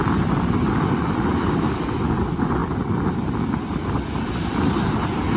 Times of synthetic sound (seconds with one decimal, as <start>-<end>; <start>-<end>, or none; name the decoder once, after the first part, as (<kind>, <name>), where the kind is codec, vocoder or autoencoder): none